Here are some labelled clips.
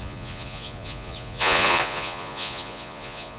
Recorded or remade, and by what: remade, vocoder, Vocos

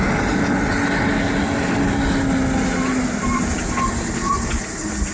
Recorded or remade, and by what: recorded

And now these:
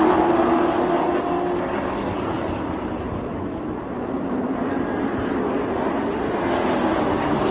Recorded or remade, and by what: recorded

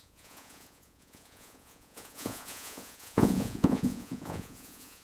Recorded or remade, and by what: remade, vocoder, Vocos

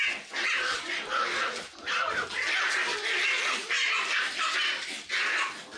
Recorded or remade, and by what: recorded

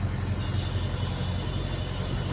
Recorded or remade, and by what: recorded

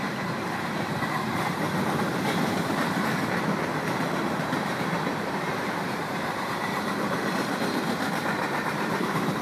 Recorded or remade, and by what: remade, vocoder, BigVGAN v2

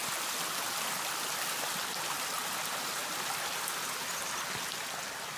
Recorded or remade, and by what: recorded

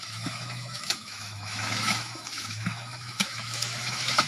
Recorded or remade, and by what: remade, autoencoder, DAC-VAE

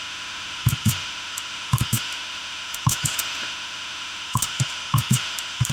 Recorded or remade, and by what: remade, autoencoder, DAC-VAE